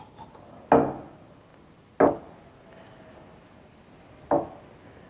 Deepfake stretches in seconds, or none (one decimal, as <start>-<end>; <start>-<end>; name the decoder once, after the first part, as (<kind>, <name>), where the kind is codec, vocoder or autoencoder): none